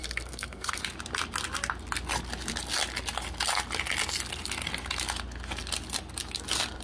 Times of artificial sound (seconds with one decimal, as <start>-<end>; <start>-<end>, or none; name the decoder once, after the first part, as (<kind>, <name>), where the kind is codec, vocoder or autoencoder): 0.0-0.8 (codec, SNAC)